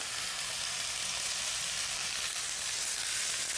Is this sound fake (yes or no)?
no